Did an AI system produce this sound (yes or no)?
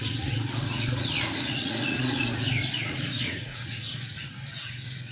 yes